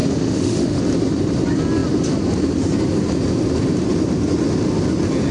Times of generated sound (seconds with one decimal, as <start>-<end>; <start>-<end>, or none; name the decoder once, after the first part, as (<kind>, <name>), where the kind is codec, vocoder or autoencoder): 0.0-0.8 (autoencoder, DAC-VAE)